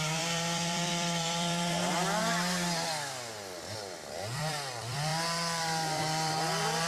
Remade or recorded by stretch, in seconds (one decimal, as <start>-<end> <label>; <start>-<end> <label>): 0.0-2.2 remade; 2.2-3.7 recorded; 3.7-6.9 remade